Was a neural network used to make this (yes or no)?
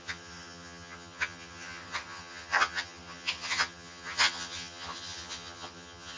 yes